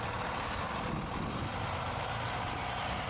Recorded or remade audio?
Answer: recorded